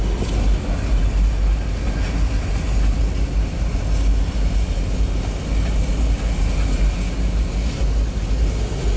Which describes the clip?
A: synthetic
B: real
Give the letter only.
B